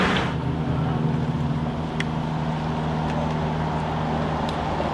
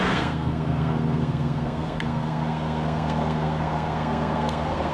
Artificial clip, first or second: second